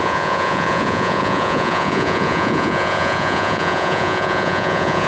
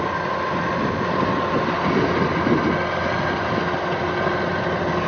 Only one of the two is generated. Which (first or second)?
first